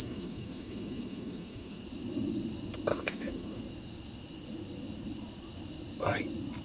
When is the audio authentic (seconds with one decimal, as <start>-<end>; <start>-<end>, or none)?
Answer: 1.8-2.9; 3.6-6.6

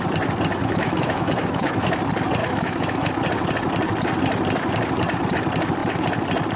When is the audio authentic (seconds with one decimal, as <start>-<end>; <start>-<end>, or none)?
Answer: 0.0-0.6; 2.0-2.4; 3.1-6.6

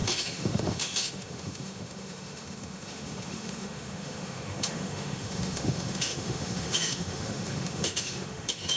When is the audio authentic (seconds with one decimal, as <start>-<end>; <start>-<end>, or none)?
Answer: none

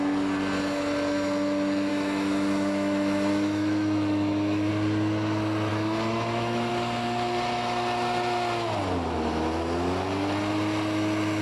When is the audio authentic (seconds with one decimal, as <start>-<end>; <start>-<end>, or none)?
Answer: 0.0-1.9; 4.7-5.7; 6.7-11.4

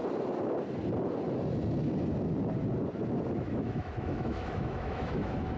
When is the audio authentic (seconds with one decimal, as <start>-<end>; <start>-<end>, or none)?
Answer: 0.0-3.4

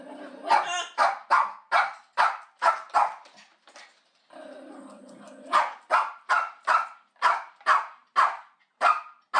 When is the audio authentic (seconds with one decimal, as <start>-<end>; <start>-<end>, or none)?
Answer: 0.0-9.4

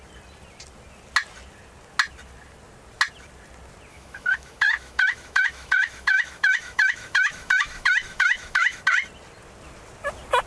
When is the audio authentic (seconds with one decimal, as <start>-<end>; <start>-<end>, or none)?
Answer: 0.0-3.9; 8.8-10.5